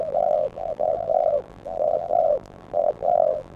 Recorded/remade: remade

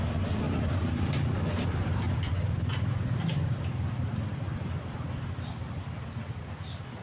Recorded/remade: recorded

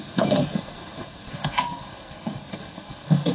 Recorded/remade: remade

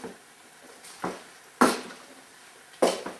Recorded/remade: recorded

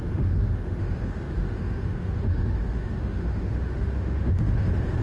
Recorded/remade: remade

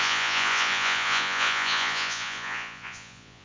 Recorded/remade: remade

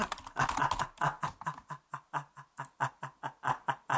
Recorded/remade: recorded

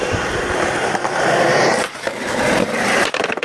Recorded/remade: remade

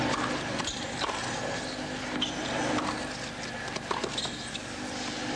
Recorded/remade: recorded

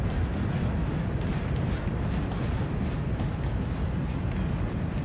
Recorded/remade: recorded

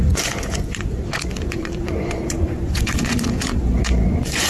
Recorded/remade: remade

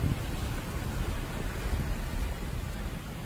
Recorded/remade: recorded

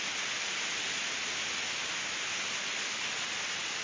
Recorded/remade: recorded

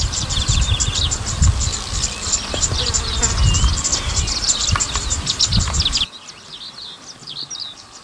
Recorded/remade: recorded